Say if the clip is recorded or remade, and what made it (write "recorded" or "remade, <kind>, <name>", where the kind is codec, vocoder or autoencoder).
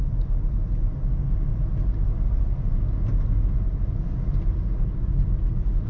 recorded